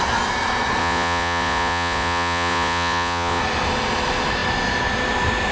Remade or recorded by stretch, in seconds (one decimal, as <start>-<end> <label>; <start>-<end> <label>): 0.0-0.8 recorded; 0.8-3.4 remade; 3.4-5.5 recorded